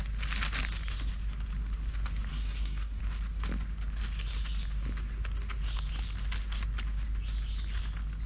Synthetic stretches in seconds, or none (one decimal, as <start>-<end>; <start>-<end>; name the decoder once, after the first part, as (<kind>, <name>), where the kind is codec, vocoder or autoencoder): 2.3-3.0 (codec, SNAC)